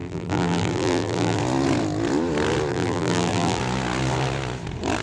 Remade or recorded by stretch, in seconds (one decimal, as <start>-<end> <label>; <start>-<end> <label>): 0.0-1.4 remade; 1.4-2.7 recorded; 2.7-3.6 remade; 3.6-5.0 recorded